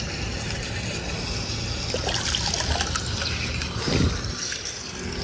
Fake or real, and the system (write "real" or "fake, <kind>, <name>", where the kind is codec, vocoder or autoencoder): real